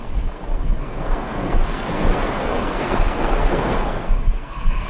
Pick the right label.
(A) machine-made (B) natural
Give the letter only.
A